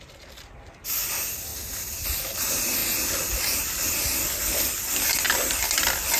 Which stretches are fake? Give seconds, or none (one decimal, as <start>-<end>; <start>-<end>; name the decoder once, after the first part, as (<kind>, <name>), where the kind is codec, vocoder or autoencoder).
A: none